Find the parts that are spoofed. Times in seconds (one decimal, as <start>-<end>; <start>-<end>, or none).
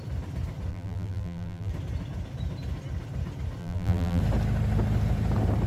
0.7-1.7; 3.6-4.2